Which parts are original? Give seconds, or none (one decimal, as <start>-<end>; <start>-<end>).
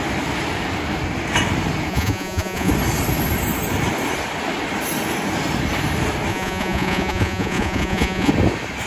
0.0-1.9; 2.7-6.3; 8.3-8.9